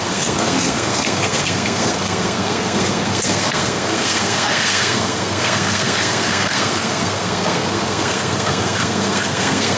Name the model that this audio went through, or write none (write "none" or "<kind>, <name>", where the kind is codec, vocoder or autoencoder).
codec, SNAC